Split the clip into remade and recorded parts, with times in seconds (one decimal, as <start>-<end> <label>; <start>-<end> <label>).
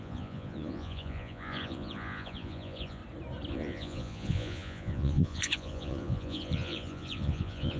0.0-3.0 remade; 3.0-3.5 recorded; 3.5-7.8 remade